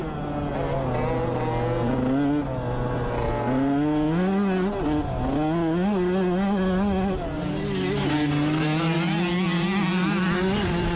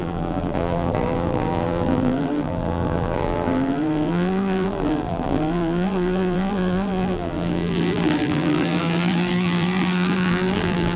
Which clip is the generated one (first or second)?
second